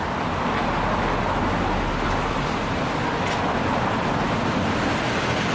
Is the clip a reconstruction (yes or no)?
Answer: no